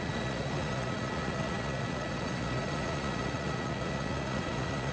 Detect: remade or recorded remade